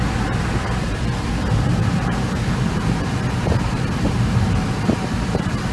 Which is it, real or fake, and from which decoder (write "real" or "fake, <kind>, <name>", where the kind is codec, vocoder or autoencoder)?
real